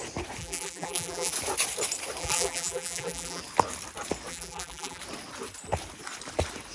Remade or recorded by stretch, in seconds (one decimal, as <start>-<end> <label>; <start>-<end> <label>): 0.0-0.4 recorded; 0.4-1.3 remade; 1.3-2.2 recorded; 2.2-3.4 remade; 3.4-4.3 recorded; 4.3-5.0 remade; 5.0-6.7 recorded